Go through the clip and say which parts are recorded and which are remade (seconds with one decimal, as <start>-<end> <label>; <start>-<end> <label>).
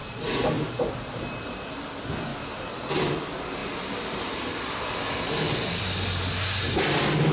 0.0-2.3 recorded; 2.3-2.9 remade; 2.9-7.3 recorded